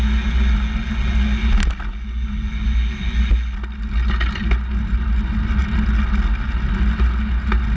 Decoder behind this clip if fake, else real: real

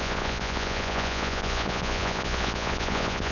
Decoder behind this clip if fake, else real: fake, vocoder, Vocos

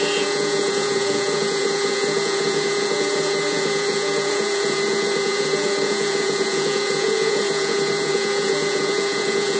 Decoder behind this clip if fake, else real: fake, vocoder, Vocos